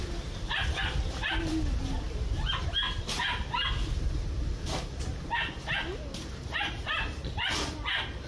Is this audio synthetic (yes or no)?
no